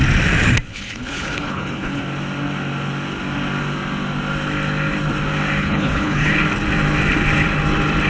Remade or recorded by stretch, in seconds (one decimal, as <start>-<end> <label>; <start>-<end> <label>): 0.0-0.7 recorded; 0.7-2.0 remade; 2.0-5.6 recorded; 5.6-6.3 remade; 6.3-8.1 recorded